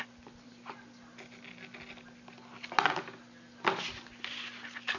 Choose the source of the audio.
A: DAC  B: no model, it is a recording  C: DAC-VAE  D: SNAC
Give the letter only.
B